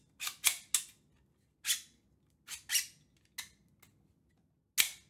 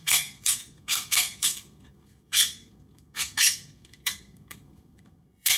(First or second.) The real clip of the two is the first